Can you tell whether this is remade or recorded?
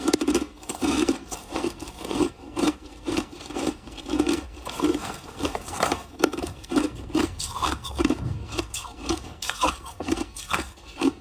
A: remade